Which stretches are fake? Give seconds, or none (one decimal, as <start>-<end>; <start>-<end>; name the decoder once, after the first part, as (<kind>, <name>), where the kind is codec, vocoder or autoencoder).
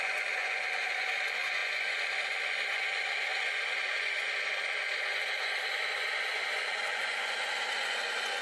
0.0-8.4 (vocoder, Vocos)